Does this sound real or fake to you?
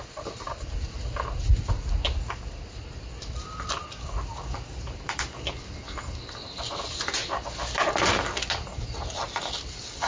real